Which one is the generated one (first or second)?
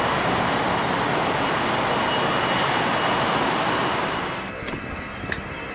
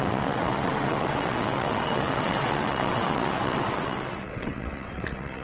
second